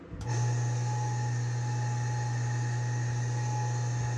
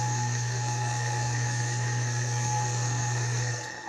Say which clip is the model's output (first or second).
second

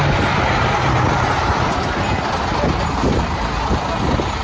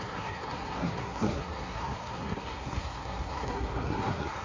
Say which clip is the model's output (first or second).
second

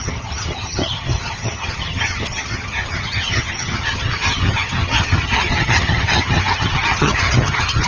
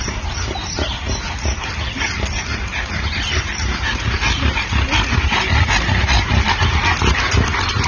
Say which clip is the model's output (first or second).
first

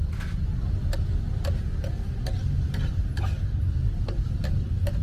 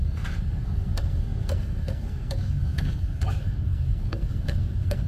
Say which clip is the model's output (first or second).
second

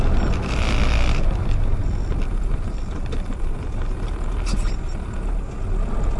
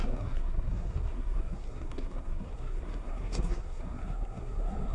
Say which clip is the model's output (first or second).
second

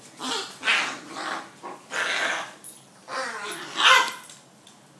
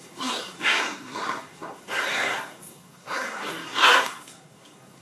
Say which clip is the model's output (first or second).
second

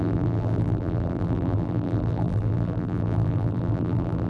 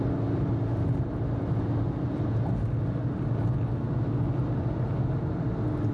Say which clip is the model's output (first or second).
first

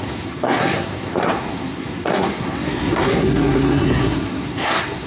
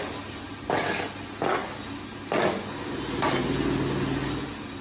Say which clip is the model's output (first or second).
first